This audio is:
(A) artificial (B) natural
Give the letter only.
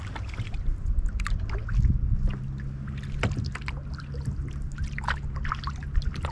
B